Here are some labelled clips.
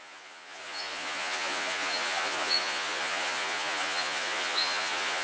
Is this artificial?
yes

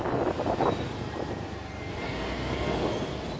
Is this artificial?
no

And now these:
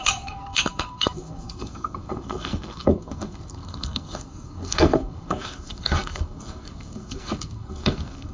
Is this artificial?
yes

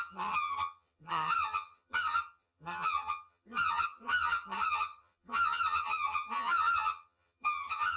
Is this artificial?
yes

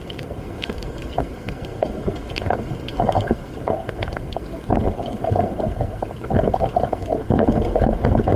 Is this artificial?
yes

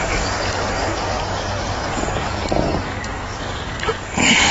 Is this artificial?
yes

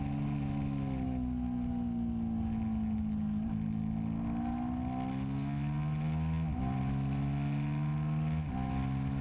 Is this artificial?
no